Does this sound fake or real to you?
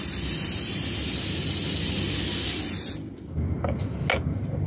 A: real